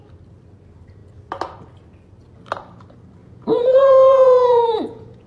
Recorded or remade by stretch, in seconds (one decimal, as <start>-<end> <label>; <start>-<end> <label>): 0.0-3.2 recorded; 3.2-5.3 remade